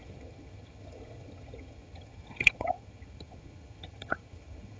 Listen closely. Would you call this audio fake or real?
fake